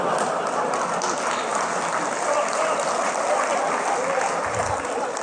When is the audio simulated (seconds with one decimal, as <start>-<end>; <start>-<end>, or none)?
none